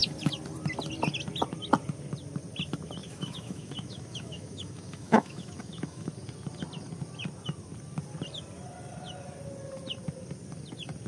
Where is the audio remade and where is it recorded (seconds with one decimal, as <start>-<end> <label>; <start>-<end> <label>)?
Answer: 0.0-3.0 recorded; 3.0-6.1 remade; 6.1-11.1 recorded

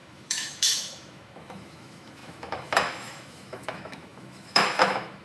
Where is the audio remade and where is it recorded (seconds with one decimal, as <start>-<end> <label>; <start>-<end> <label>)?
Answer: 0.0-5.2 remade

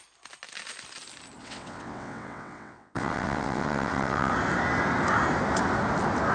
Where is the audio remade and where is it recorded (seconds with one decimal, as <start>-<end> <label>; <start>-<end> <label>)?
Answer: 0.0-1.4 recorded; 1.4-4.3 remade; 4.3-6.3 recorded

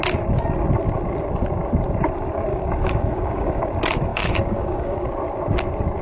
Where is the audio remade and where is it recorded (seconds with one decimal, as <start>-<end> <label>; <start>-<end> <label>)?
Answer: 0.0-2.5 recorded; 2.5-3.6 remade; 3.6-4.1 recorded; 4.1-5.1 remade; 5.1-6.0 recorded

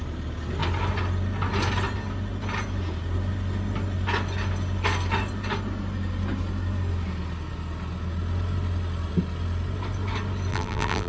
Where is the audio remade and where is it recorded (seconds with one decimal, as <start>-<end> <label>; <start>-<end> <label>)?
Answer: 0.0-10.5 recorded; 10.5-11.1 remade

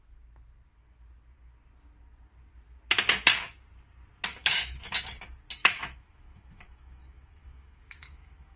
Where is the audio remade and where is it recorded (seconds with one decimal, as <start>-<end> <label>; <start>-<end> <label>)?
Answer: 0.0-4.3 recorded; 4.3-4.9 remade; 4.9-5.6 recorded; 5.6-8.6 remade

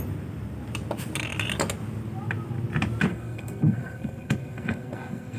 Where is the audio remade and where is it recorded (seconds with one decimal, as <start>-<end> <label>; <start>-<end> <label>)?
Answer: 0.0-3.1 recorded; 3.1-5.4 remade